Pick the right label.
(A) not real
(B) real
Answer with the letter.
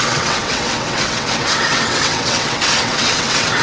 A